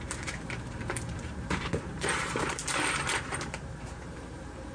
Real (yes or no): no